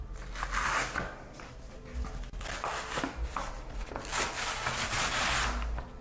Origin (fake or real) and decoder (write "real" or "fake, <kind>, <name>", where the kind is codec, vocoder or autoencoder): real